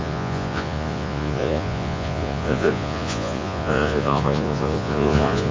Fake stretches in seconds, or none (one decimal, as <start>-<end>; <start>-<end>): 0.0-5.5